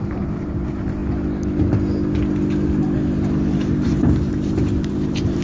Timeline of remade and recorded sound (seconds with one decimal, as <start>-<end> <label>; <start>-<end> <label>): 0.0-1.0 remade; 1.0-3.8 recorded; 3.8-5.4 remade